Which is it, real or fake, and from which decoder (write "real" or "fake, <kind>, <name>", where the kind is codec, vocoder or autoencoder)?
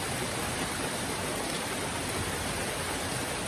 real